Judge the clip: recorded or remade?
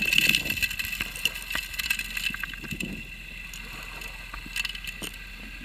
recorded